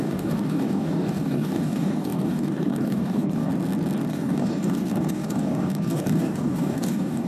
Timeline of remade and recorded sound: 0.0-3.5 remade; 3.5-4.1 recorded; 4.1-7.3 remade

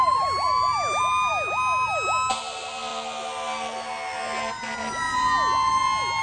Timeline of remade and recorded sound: 0.0-1.3 remade; 1.3-2.4 recorded; 2.4-2.9 remade; 2.9-6.2 recorded

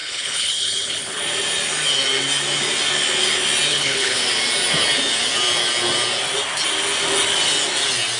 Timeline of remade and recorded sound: 0.0-1.2 remade; 1.2-3.7 recorded; 3.7-4.2 remade; 4.2-8.2 recorded

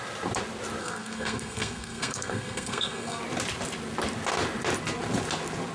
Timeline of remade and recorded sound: 0.0-0.8 recorded; 0.8-3.2 remade; 3.2-5.7 recorded